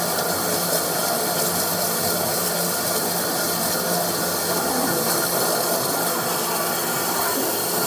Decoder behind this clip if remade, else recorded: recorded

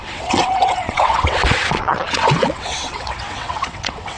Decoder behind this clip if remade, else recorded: remade, vocoder, WaveNeXt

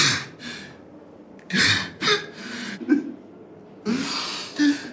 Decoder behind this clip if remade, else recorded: recorded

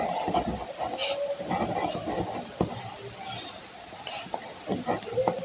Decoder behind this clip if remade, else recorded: recorded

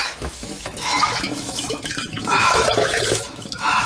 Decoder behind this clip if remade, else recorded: remade, autoencoder, DAC-VAE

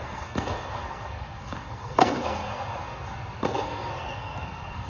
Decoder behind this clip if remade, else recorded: remade, codec, SNAC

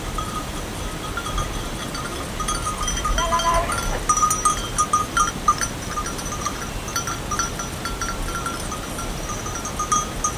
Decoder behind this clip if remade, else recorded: recorded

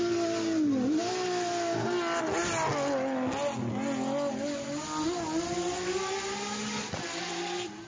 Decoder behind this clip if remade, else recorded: recorded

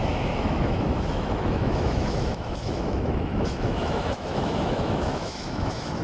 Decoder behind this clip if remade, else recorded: remade, autoencoder, DAC-VAE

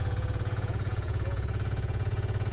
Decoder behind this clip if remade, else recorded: remade, vocoder, Vocos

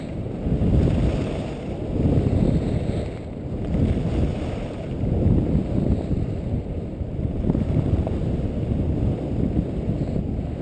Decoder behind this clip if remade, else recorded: recorded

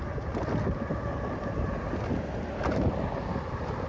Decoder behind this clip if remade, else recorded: recorded